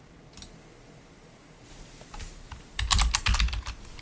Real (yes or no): yes